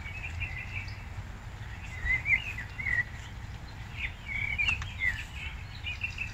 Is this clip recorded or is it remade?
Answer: recorded